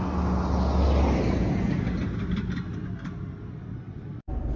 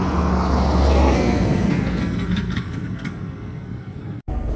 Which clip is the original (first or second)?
first